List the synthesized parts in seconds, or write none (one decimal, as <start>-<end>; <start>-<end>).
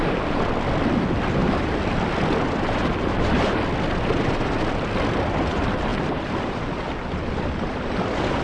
1.4-2.2; 5.9-8.4